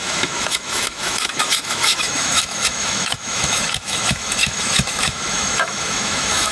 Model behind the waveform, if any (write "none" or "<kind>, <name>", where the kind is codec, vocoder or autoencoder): autoencoder, DAC-VAE